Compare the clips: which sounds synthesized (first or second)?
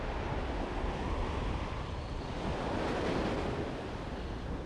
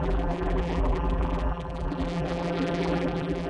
second